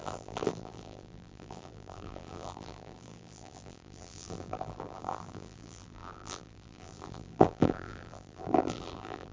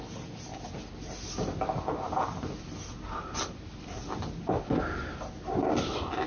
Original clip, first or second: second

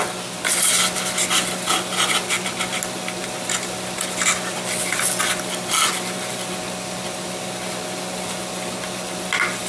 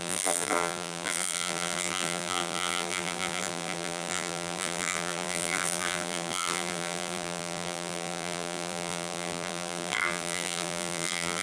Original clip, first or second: first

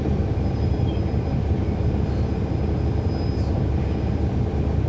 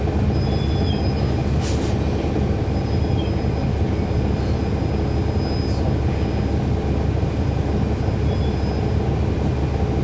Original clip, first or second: second